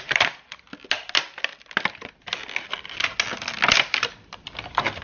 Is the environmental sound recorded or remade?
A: recorded